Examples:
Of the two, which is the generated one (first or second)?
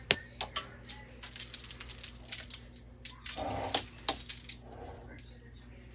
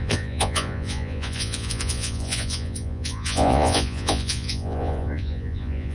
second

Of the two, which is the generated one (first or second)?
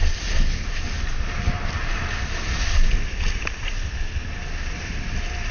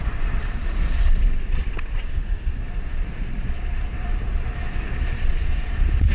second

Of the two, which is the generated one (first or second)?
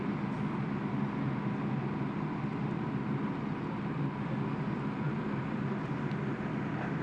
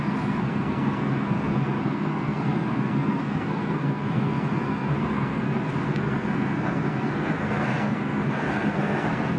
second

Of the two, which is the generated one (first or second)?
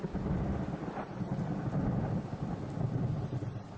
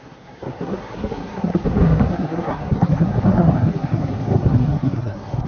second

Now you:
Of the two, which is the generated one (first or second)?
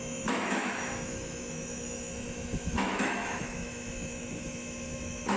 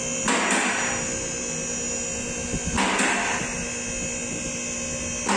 first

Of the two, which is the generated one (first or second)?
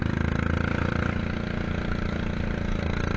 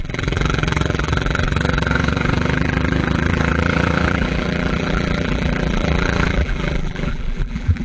second